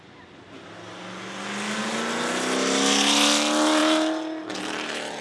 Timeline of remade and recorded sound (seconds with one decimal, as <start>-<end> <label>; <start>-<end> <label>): 0.0-5.2 recorded